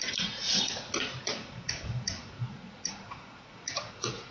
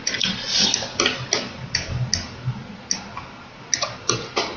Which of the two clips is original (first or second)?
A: second